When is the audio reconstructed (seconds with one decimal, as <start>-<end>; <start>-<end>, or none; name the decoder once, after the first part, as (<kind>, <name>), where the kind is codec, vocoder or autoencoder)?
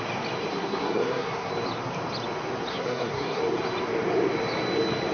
0.5-1.5 (codec, SNAC); 2.7-3.4